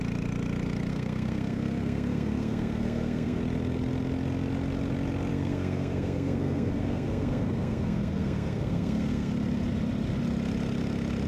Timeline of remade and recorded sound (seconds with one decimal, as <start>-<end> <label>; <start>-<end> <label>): 0.0-0.9 recorded; 0.9-3.4 remade; 3.4-5.3 recorded; 5.3-9.3 remade; 9.3-11.3 recorded